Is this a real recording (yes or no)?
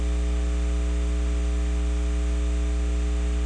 yes